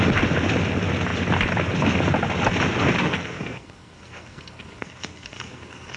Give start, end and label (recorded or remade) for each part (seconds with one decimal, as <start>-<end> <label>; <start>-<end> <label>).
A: 0.0-3.0 recorded; 3.0-6.0 remade